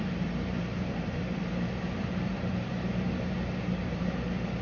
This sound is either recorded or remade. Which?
remade